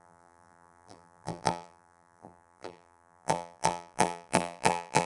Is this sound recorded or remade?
remade